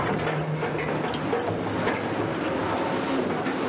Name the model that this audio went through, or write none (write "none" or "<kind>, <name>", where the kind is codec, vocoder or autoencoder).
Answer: none